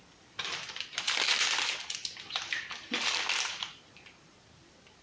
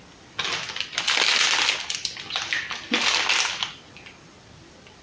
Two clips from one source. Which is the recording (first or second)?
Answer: second